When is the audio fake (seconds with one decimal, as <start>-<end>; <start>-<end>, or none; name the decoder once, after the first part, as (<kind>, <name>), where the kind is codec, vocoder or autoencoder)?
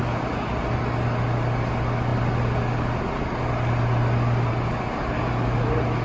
none